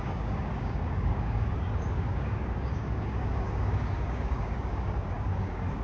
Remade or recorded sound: remade